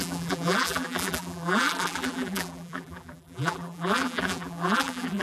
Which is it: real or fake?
fake